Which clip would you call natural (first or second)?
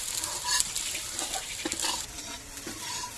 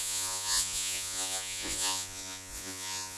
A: first